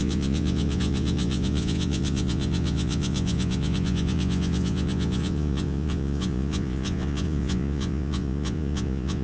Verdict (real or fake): fake